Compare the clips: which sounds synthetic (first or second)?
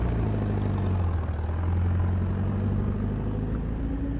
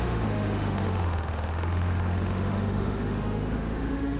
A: second